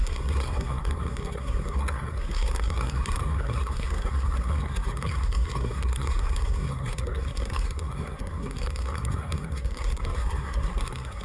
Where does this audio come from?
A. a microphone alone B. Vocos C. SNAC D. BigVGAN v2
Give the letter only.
C